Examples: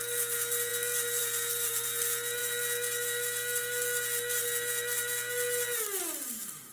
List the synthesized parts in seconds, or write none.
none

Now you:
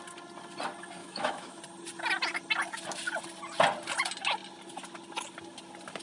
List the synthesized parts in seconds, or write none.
1.0-1.6 (autoencoder, DAC-VAE)

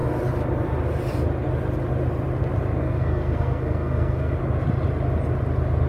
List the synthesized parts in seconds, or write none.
2.8-4.4 (codec, SNAC)

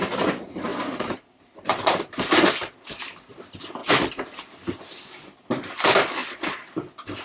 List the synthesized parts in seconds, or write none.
0.7-2.0 (vocoder, BigVGAN v2)